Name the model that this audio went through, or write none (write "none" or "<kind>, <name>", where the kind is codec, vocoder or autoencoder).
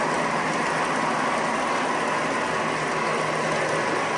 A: none